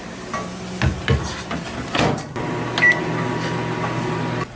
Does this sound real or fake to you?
real